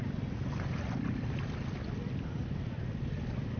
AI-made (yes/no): no